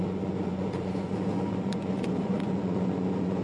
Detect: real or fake fake